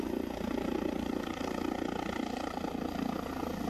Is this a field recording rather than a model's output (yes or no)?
yes